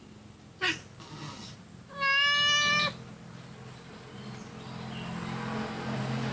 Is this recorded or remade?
recorded